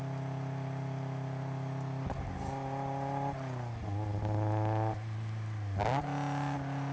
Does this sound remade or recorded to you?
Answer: recorded